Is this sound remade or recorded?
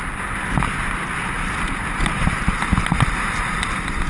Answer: recorded